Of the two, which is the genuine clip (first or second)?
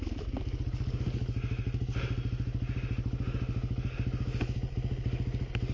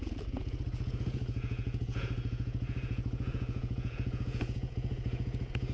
first